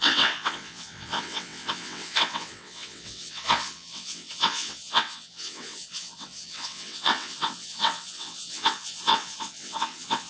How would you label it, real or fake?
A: fake